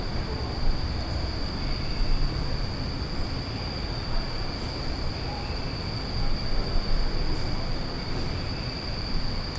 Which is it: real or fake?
real